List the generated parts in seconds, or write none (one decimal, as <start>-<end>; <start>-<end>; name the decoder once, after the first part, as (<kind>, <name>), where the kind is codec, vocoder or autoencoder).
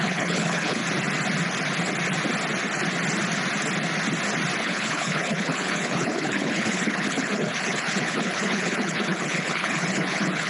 0.0-0.8 (codec, HILCodec); 4.6-10.5